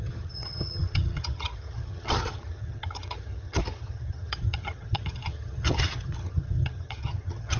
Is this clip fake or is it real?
fake